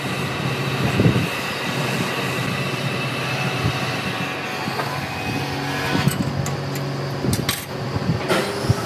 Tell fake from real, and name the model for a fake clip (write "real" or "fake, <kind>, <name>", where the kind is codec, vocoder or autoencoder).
real